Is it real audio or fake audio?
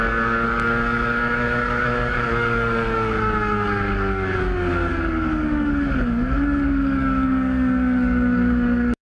fake